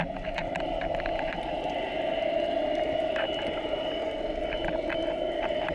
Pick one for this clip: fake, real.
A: real